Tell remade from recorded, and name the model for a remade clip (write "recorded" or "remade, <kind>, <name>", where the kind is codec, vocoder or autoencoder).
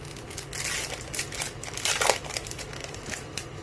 recorded